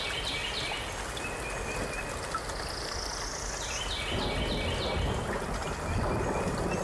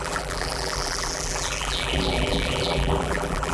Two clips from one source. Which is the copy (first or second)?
second